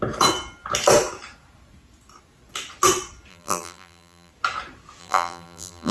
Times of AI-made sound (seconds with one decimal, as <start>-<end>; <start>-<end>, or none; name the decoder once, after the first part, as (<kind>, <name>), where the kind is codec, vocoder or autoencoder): 3.3-4.3 (vocoder, BigVGAN v2); 5.0-5.9